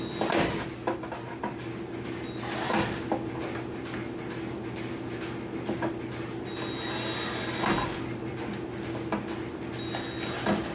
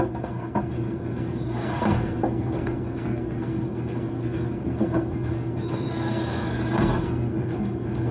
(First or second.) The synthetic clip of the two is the second